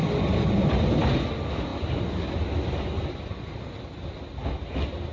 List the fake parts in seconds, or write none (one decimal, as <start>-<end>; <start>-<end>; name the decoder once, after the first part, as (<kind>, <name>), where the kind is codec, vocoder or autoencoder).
none